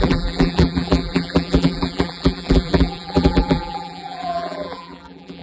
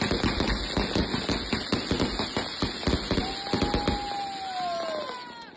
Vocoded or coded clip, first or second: first